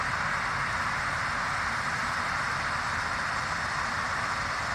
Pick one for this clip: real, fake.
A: real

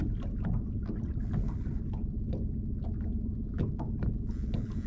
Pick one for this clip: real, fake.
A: real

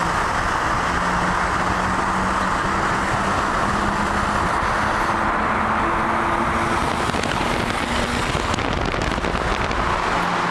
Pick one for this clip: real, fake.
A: real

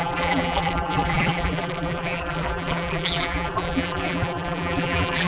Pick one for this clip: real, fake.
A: fake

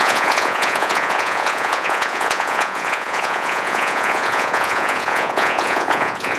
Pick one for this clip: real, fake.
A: fake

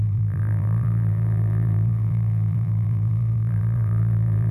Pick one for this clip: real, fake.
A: fake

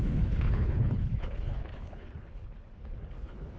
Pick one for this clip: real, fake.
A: fake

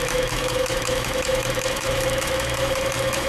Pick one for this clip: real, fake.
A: fake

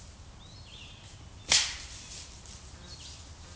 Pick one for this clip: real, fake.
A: real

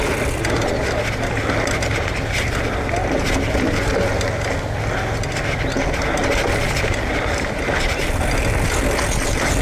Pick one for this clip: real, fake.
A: real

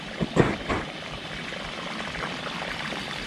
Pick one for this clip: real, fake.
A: real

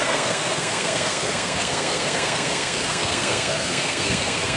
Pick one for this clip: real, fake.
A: fake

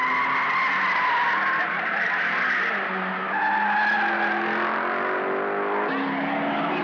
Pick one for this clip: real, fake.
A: real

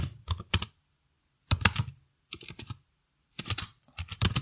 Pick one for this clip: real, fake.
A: real